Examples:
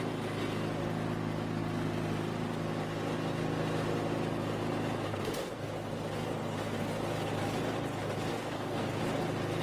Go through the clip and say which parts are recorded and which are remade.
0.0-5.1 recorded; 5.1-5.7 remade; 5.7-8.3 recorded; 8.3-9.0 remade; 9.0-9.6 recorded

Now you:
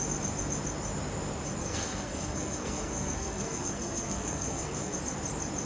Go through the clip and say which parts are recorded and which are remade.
0.0-1.6 recorded; 1.6-5.0 remade; 5.0-5.7 recorded

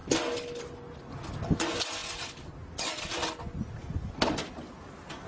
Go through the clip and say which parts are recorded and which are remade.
0.0-5.3 recorded

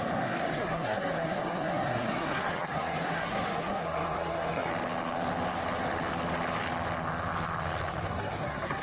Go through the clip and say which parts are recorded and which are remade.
0.0-4.7 remade; 4.7-8.1 recorded; 8.1-8.8 remade

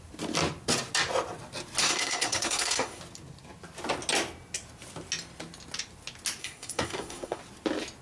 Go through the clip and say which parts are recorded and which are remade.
0.0-1.8 recorded; 1.8-3.0 remade; 3.0-6.4 recorded; 6.4-7.4 remade; 7.4-8.0 recorded

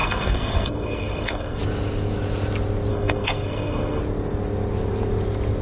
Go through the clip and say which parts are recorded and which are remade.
0.0-1.6 remade; 1.6-2.9 recorded; 2.9-4.0 remade; 4.0-5.6 recorded

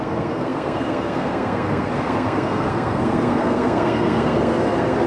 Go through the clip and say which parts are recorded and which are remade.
0.0-5.1 remade

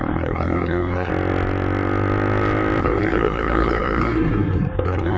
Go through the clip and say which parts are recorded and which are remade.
0.0-1.1 remade; 1.1-2.8 recorded; 2.8-5.2 remade